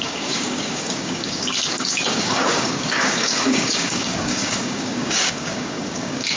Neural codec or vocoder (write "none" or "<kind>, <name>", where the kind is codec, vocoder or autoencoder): codec, DAC